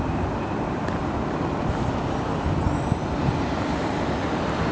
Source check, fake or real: real